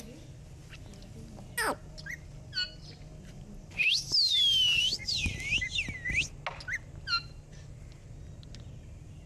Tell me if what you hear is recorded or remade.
recorded